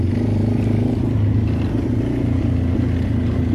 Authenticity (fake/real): real